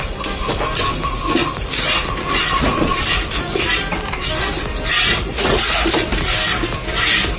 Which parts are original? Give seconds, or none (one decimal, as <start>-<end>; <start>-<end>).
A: 0.0-1.4; 3.6-5.1; 5.9-7.4